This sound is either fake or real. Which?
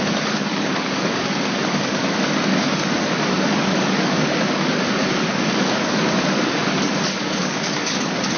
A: fake